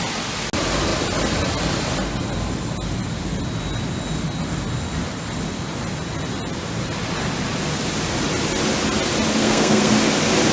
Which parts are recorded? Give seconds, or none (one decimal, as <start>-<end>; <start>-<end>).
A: 0.0-9.4; 9.9-10.5